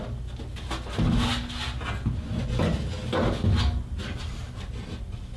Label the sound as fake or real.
real